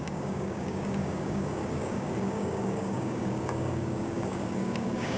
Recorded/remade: remade